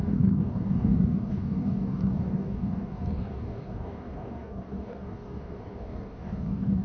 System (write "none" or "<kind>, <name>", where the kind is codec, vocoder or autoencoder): codec, DAC